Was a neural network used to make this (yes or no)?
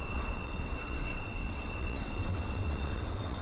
yes